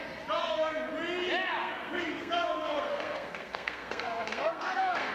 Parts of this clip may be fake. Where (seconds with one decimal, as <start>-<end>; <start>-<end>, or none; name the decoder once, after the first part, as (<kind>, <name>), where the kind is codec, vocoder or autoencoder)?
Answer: 0.4-0.9 (codec, SNAC); 1.6-5.1

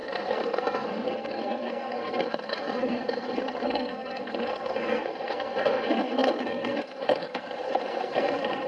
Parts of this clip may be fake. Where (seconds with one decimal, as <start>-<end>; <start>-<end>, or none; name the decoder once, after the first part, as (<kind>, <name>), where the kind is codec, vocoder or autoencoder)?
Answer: 0.0-8.7 (codec, SNAC)

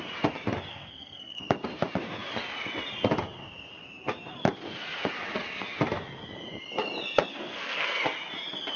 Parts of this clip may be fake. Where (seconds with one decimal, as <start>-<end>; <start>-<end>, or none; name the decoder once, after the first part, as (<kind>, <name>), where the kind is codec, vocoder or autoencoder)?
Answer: 0.7-1.4 (codec, SNAC); 7.3-8.0

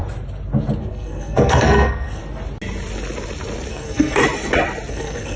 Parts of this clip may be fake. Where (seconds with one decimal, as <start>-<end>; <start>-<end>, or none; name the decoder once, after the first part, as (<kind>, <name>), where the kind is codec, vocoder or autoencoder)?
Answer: 0.8-2.2 (codec, SNAC); 3.7-4.2; 4.9-5.4

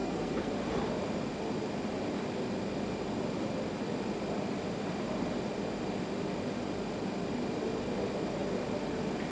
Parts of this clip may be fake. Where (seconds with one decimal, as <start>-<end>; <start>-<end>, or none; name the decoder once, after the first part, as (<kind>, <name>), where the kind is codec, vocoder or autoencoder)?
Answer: 0.0-0.5 (codec, SNAC)

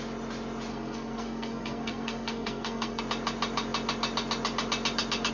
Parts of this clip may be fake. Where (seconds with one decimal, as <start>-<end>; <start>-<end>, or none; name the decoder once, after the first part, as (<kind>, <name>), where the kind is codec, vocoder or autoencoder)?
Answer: 0.7-3.0 (codec, SNAC)